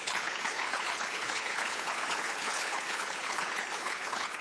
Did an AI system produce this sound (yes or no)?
yes